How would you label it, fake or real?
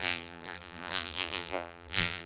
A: fake